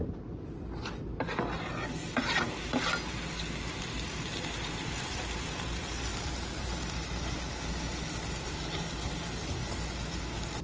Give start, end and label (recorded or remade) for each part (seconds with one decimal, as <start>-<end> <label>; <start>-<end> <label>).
0.0-10.6 recorded